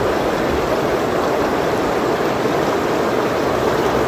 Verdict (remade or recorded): recorded